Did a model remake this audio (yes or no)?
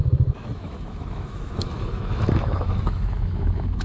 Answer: yes